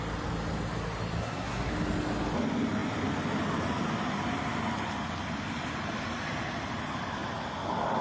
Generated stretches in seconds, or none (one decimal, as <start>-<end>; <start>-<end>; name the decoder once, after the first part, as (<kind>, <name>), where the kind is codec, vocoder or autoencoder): 1.2-1.7 (codec, SNAC)